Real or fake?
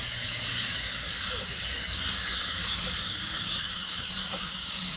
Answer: fake